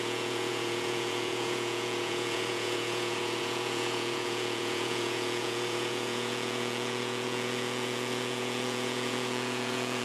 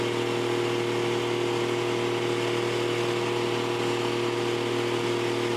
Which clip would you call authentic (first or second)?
second